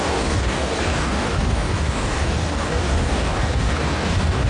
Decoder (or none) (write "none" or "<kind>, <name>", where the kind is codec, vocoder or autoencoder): codec, DAC